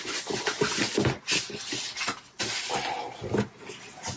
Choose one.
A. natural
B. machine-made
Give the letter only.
A